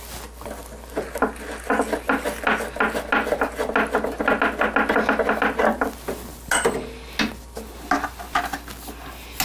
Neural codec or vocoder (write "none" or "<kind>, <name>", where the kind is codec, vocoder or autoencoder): none